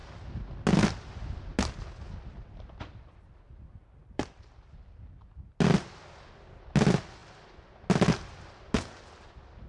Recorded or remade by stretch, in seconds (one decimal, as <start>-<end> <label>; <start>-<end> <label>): 0.0-4.0 recorded; 4.0-4.5 remade; 4.5-9.7 recorded